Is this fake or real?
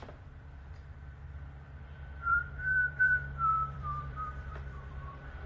fake